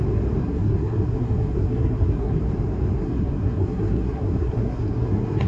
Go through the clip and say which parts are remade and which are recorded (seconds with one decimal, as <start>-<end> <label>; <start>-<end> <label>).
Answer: 0.0-0.4 recorded; 0.4-2.4 remade; 2.4-3.0 recorded; 3.0-5.5 remade